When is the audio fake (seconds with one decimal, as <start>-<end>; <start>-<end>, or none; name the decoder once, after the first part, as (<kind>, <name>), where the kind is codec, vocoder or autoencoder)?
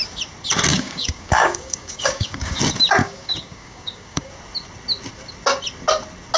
0.7-2.6 (codec, DAC); 3.0-4.3